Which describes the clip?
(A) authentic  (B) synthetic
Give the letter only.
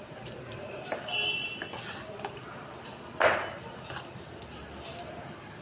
A